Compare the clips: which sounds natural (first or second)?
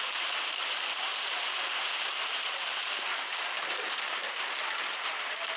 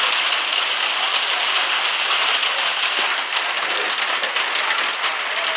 second